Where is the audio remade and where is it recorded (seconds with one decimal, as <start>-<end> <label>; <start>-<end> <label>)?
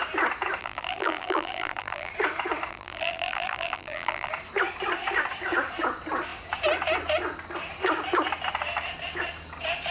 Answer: 0.0-0.6 recorded; 0.6-2.1 remade; 2.1-2.7 recorded; 2.7-4.3 remade; 4.3-9.9 recorded